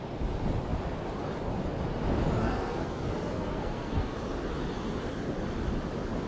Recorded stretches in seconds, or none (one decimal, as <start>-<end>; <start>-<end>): 0.0-2.4; 4.2-6.3